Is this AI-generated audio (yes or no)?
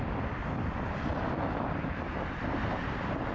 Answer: no